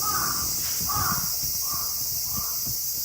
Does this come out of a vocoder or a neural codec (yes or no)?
no